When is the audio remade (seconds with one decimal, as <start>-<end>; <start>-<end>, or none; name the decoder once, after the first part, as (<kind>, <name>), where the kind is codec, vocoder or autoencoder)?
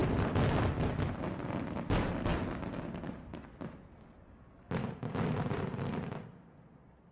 none